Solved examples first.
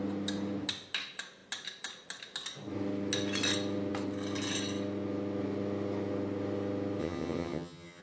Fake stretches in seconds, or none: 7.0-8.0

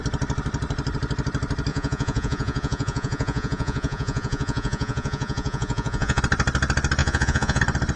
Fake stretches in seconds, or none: 1.7-6.2; 7.0-7.6

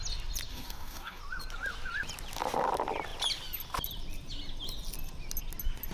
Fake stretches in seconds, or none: 0.5-1.2